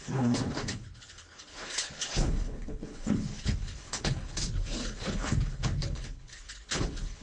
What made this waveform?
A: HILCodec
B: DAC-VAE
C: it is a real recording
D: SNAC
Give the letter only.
A